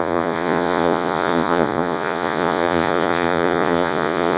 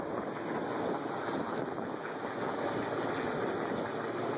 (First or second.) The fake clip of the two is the first